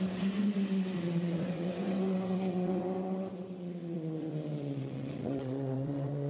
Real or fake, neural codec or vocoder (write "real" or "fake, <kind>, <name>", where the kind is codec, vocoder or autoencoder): fake, vocoder, WaveNeXt